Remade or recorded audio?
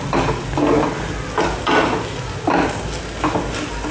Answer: recorded